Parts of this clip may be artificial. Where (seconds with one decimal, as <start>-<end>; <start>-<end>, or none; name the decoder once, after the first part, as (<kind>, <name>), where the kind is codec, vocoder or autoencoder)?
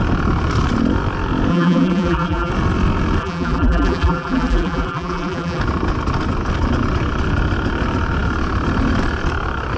1.5-2.5 (vocoder, BigVGAN v2); 3.2-5.6